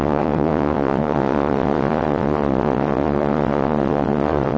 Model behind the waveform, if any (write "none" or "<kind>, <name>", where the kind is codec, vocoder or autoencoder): vocoder, WaveNeXt